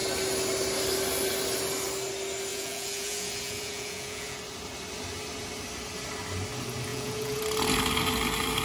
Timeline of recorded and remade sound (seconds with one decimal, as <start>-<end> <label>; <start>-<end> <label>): 0.0-2.5 recorded; 2.5-4.4 remade; 4.4-6.9 recorded; 6.9-7.4 remade; 7.4-8.6 recorded